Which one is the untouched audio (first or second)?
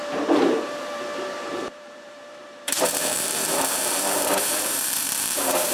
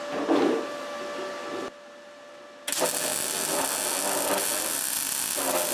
second